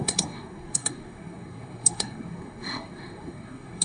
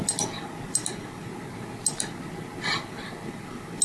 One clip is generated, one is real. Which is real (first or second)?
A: second